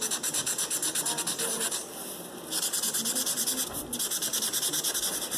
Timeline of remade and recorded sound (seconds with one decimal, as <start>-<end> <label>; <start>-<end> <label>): 0.0-1.3 recorded; 1.3-1.8 remade; 1.8-5.4 recorded